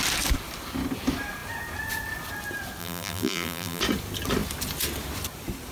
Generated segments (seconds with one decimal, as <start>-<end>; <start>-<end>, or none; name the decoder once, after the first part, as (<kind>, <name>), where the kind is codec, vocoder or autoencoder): 2.8-3.8 (vocoder, BigVGAN v2)